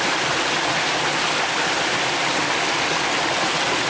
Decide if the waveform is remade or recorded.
recorded